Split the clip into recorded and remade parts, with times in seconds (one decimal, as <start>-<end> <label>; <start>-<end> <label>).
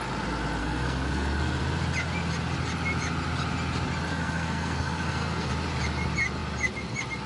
0.0-0.6 recorded; 0.6-1.6 remade; 1.6-4.1 recorded; 4.1-5.5 remade; 5.5-7.3 recorded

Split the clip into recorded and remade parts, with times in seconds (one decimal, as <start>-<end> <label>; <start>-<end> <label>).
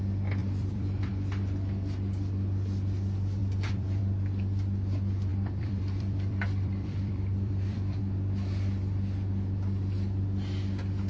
0.0-0.4 recorded; 0.4-1.1 remade; 1.1-3.4 recorded; 3.4-4.0 remade; 4.0-5.3 recorded; 5.3-8.0 remade; 8.0-11.1 recorded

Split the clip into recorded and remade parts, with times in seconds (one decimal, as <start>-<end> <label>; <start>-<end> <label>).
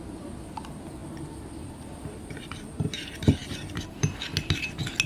0.0-1.0 recorded; 1.0-2.3 remade; 2.3-3.4 recorded; 3.4-4.3 remade; 4.3-5.1 recorded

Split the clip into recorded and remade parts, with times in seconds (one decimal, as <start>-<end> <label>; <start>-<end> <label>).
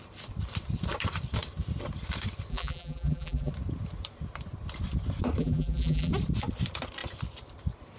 0.0-2.5 recorded; 2.5-3.5 remade; 3.5-5.4 recorded; 5.4-6.1 remade; 6.1-8.0 recorded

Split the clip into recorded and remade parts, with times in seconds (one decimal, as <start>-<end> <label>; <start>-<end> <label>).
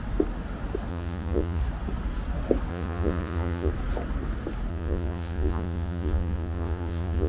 0.0-0.9 recorded; 0.9-1.6 remade; 1.6-2.7 recorded; 2.7-3.7 remade; 3.7-4.7 recorded; 4.7-7.3 remade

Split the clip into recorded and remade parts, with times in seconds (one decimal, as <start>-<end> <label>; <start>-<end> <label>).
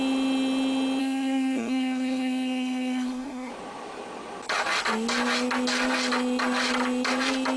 0.0-1.0 recorded; 1.0-3.5 remade; 3.5-7.6 recorded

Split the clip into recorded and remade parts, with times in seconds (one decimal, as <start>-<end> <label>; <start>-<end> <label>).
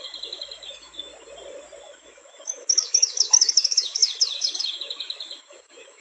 0.0-1.1 remade; 1.1-1.8 recorded; 1.8-6.0 remade